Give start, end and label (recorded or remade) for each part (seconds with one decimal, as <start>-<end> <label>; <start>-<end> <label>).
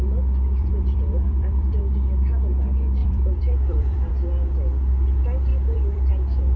0.0-0.5 recorded; 0.5-1.8 remade; 1.8-3.0 recorded; 3.0-4.1 remade; 4.1-5.5 recorded; 5.5-6.1 remade; 6.1-6.6 recorded